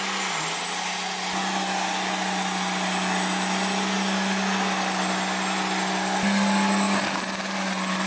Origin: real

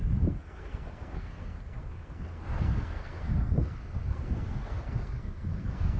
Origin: fake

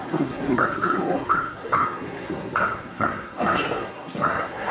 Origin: fake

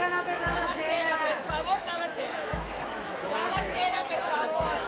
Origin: fake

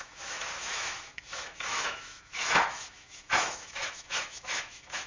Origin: fake